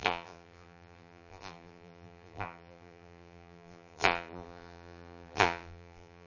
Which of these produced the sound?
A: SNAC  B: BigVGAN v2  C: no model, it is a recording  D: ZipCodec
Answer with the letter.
B